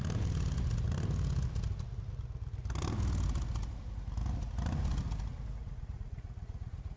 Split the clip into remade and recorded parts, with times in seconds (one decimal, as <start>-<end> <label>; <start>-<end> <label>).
0.0-5.6 recorded; 5.6-7.0 remade

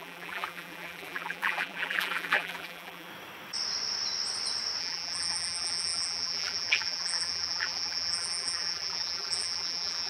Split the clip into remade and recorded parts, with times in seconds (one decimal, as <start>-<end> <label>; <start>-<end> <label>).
0.0-3.1 remade; 3.1-4.8 recorded; 4.8-10.1 remade

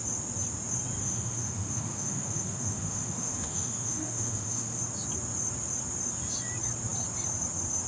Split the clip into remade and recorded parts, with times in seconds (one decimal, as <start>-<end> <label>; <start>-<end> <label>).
0.0-1.0 recorded; 1.0-4.8 remade; 4.8-7.9 recorded

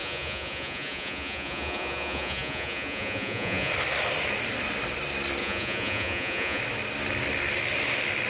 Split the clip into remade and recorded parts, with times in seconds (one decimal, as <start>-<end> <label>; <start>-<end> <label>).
0.0-3.7 remade; 3.7-5.4 recorded; 5.4-6.6 remade; 6.6-8.3 recorded